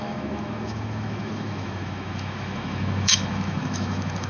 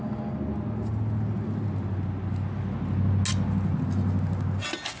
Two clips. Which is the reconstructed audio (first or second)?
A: first